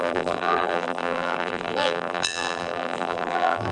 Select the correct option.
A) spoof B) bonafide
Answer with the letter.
A